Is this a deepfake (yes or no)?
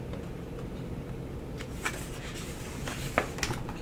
no